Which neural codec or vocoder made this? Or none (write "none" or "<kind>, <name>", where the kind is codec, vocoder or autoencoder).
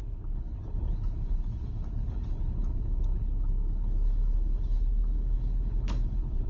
codec, HILCodec